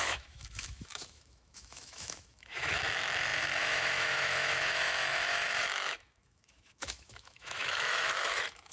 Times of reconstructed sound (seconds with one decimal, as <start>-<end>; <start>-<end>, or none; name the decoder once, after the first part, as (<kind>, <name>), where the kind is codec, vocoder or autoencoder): 0.0-8.7 (autoencoder, DAC-VAE)